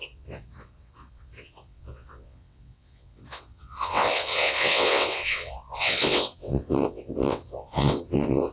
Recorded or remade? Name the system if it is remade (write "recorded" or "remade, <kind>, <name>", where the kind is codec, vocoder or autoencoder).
remade, vocoder, WaveNeXt